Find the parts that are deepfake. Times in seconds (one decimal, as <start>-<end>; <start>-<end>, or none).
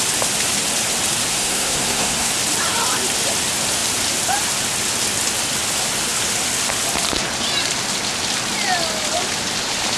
1.3-2.3